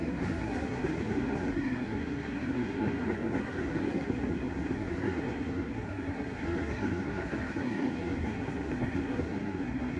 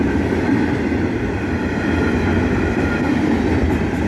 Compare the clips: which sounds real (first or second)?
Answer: second